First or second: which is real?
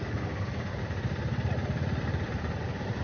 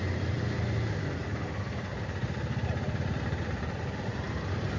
second